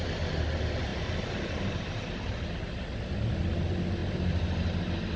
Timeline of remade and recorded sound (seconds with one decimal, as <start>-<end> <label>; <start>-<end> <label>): 0.0-0.9 recorded; 0.9-2.6 remade; 2.6-5.2 recorded